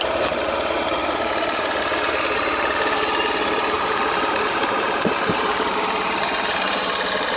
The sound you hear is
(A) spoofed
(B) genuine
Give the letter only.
A